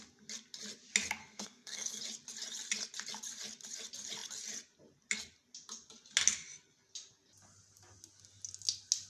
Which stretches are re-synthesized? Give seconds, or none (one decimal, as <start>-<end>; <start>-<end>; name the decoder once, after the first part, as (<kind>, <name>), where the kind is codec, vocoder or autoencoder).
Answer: 1.2-2.0 (codec, SNAC)